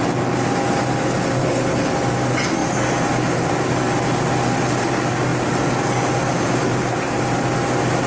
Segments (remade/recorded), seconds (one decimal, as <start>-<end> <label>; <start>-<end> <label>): 0.0-1.4 recorded; 1.4-1.9 remade; 1.9-8.1 recorded